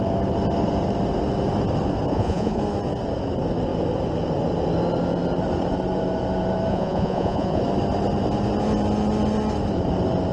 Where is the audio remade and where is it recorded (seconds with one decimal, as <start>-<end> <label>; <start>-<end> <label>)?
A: 0.0-2.1 recorded; 2.1-2.6 remade; 2.6-6.7 recorded; 6.7-7.6 remade; 7.6-10.3 recorded